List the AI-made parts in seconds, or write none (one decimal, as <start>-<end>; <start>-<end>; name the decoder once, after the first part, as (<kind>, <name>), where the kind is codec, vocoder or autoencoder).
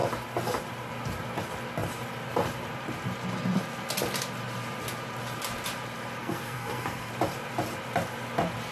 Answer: 6.2-7.1 (codec, SNAC)